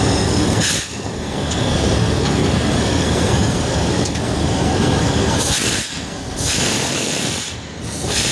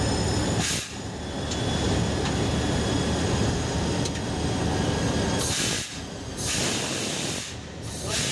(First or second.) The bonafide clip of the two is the second